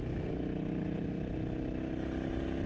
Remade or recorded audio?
recorded